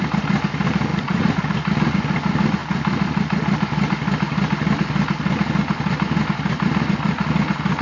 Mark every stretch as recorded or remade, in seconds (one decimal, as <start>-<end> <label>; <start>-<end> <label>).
0.0-0.9 recorded; 0.9-1.4 remade; 1.4-7.8 recorded